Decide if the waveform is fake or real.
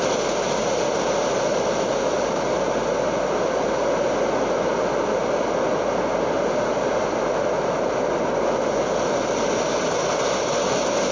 real